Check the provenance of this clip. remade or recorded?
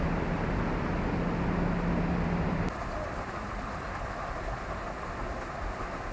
recorded